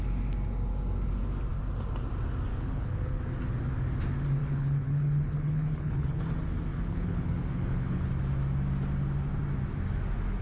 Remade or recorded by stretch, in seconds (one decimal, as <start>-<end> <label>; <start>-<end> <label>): 0.0-2.5 recorded; 2.5-3.2 remade; 3.2-4.4 recorded; 4.4-6.2 remade; 6.2-6.7 recorded; 6.7-8.1 remade; 8.1-10.4 recorded